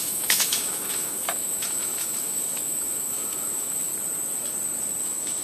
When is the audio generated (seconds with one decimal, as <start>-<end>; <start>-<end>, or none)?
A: 0.0-3.9; 5.0-5.4